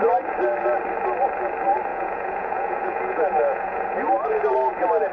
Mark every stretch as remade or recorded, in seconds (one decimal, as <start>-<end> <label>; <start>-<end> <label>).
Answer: 0.0-1.9 recorded; 1.9-4.4 remade; 4.4-5.1 recorded